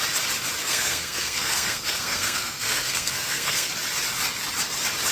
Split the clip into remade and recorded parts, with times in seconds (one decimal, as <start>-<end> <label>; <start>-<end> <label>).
0.0-0.6 recorded; 0.6-3.7 remade; 3.7-5.1 recorded